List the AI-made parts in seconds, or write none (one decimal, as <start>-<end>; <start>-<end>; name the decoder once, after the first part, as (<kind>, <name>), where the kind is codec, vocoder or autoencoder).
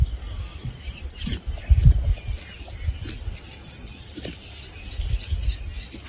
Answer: 0.5-2.8 (vocoder, BigVGAN v2); 3.6-4.9